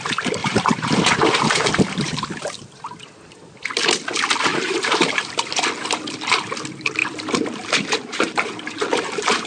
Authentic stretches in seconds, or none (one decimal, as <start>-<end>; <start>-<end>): 0.0-0.4; 2.8-4.5; 5.3-7.0